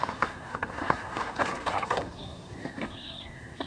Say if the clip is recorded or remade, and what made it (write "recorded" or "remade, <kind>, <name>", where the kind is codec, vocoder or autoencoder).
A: remade, codec, SNAC